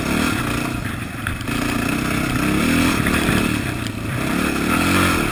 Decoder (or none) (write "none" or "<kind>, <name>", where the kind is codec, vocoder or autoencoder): none